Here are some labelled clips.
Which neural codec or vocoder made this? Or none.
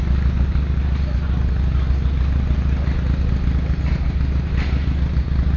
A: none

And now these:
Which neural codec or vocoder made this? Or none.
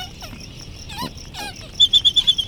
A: vocoder, BigVGAN v2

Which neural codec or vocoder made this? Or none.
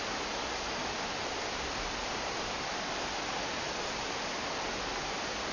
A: none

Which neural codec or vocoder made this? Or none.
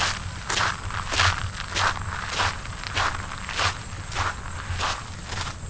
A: none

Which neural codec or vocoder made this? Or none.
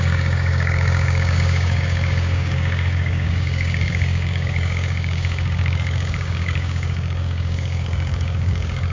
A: codec, DAC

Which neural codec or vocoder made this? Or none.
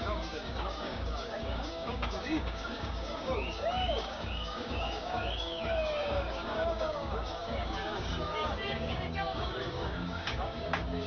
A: codec, DAC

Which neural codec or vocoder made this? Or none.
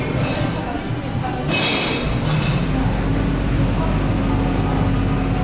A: none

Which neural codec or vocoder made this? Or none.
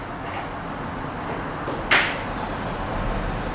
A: none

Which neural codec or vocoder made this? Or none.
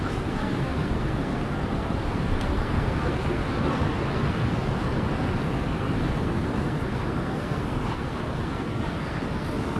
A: codec, SNAC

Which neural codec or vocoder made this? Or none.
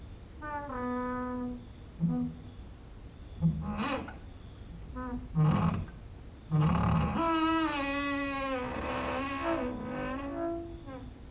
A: none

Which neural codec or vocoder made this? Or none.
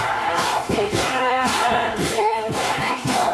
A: codec, SNAC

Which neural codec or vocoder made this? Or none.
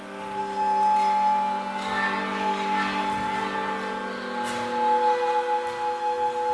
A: none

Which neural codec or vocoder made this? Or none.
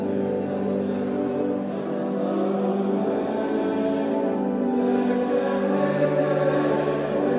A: none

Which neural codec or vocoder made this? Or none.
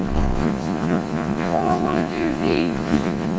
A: vocoder, Vocos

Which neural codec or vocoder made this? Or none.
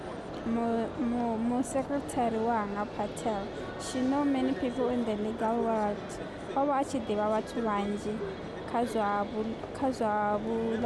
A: none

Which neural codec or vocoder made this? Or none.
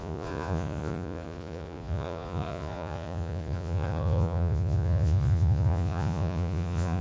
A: vocoder, Vocos